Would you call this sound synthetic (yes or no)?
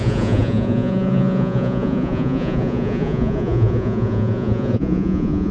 yes